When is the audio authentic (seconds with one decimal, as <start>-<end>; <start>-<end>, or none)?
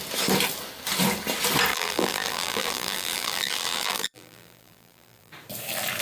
0.0-1.7; 5.3-6.0